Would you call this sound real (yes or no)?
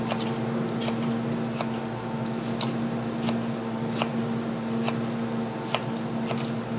yes